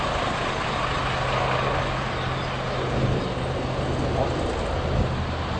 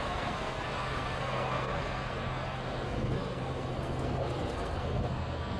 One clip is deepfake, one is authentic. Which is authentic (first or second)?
first